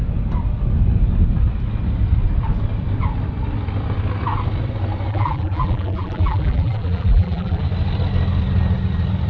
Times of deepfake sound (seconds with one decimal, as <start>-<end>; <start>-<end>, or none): 5.1-7.6